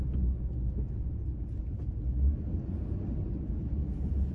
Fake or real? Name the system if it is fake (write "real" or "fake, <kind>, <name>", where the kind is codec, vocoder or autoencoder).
real